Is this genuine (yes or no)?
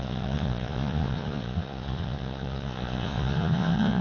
no